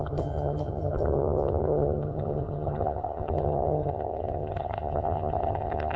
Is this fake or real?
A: fake